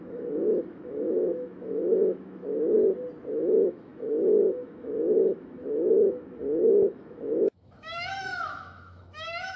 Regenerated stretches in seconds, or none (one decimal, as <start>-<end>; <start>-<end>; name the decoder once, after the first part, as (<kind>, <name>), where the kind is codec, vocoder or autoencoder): 0.0-2.4 (autoencoder, DAC-VAE); 3.3-9.6